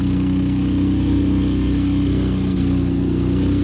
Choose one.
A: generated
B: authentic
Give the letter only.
A